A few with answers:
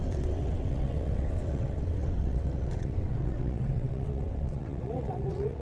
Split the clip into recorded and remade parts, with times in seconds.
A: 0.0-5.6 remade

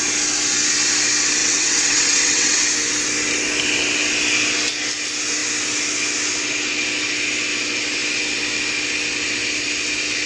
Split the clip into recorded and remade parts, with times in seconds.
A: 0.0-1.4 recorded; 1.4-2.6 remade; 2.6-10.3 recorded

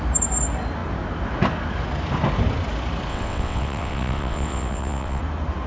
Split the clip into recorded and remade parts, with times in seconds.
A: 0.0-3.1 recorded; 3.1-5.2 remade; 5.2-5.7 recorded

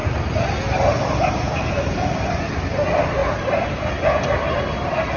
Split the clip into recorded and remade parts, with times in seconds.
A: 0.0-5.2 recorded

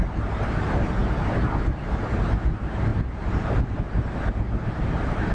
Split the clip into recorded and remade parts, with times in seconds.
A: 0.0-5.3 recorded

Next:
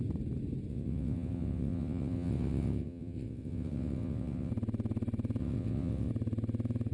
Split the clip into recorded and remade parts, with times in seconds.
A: 0.0-0.7 recorded; 0.7-4.5 remade; 4.5-5.4 recorded; 5.4-6.1 remade; 6.1-6.9 recorded

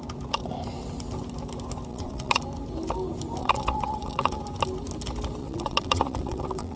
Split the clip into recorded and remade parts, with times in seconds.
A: 0.0-1.9 recorded; 1.9-2.4 remade; 2.4-3.4 recorded; 3.4-4.4 remade; 4.4-5.4 recorded; 5.4-6.8 remade